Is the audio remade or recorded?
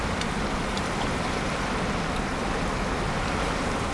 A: recorded